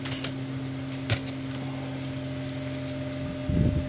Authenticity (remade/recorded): recorded